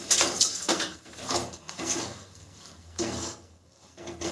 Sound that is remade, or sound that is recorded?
remade